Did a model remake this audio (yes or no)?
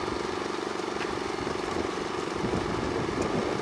no